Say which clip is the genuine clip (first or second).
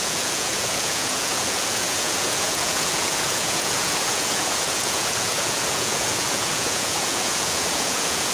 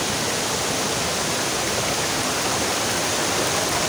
second